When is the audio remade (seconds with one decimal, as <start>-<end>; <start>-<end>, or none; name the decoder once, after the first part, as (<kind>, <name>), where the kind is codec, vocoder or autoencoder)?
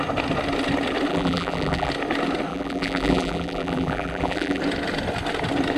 1.1-1.9 (vocoder, BigVGAN v2); 2.5-4.6